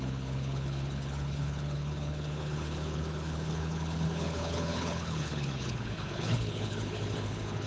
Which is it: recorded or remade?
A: remade